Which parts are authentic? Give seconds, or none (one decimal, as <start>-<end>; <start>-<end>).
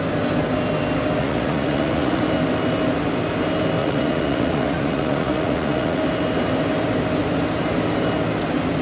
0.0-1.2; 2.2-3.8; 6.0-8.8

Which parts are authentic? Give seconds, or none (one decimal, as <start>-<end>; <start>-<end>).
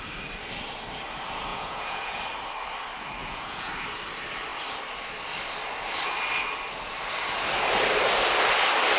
0.0-1.5; 2.2-3.2; 3.7-9.0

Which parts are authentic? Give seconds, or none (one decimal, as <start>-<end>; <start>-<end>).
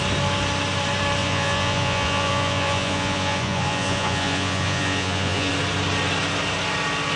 0.0-1.2; 5.5-7.2